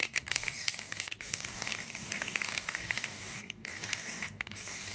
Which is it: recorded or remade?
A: remade